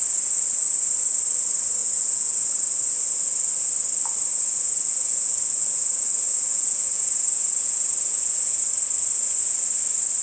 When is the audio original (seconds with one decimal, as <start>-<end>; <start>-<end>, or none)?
0.0-1.8; 2.5-4.3; 8.7-10.2